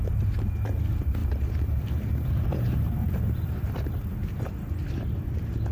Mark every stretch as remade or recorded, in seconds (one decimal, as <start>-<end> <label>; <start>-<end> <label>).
0.0-1.2 recorded; 1.2-4.5 remade; 4.5-5.7 recorded